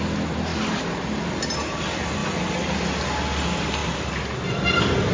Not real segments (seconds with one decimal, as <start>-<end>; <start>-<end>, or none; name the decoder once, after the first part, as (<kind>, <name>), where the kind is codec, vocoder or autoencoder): 0.5-1.3 (vocoder, BigVGAN v2); 2.2-2.9; 3.8-4.5